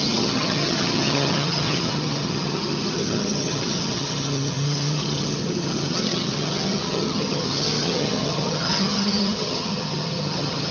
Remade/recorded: remade